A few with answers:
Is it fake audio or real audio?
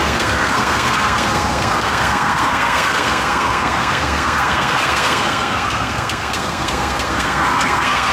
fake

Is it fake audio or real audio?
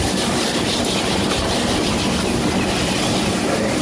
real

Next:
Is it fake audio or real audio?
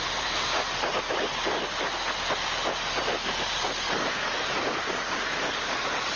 real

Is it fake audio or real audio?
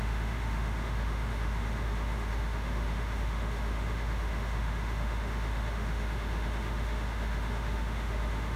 fake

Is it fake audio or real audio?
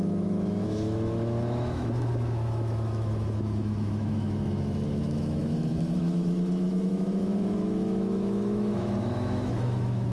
fake